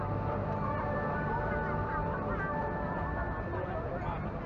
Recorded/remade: recorded